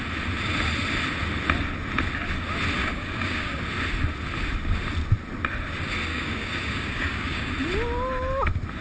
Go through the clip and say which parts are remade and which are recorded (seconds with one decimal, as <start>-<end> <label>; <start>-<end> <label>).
0.0-2.8 recorded; 2.8-3.6 remade; 3.6-6.1 recorded; 6.1-7.5 remade; 7.5-8.8 recorded